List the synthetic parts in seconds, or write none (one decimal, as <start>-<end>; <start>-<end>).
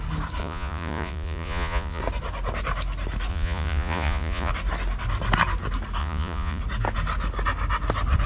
0.4-2.0; 3.3-4.5; 6.0-6.6